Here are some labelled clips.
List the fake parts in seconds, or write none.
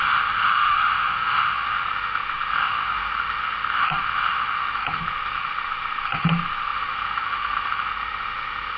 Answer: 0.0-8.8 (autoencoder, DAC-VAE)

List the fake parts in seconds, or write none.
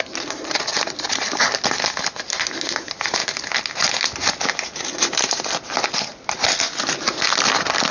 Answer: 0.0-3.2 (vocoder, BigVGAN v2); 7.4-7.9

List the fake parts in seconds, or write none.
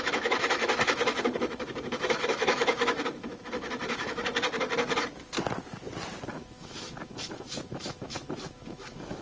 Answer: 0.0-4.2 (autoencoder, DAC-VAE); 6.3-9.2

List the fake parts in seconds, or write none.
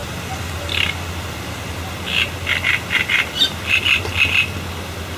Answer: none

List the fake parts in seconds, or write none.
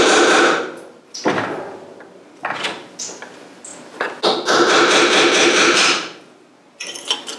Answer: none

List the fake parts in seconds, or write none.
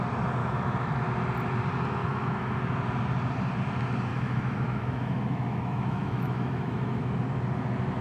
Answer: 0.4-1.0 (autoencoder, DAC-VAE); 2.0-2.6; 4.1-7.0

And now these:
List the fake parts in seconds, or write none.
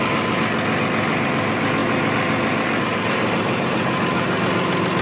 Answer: none